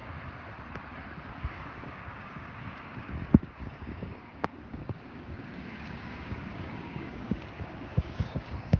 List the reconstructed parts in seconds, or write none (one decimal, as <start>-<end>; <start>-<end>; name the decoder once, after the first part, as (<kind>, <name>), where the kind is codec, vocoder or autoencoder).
1.4-8.8 (codec, DAC)